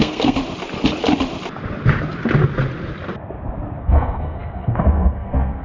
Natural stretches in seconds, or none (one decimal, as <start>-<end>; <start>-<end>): 0.4-3.8